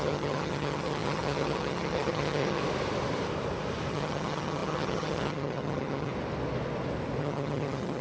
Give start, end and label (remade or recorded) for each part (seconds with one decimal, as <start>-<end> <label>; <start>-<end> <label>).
0.0-2.6 remade; 2.6-3.9 recorded; 3.9-6.1 remade; 6.1-7.2 recorded; 7.2-8.0 remade